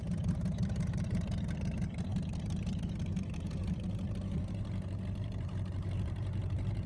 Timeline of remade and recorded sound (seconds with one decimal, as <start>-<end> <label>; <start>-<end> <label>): 0.0-6.9 remade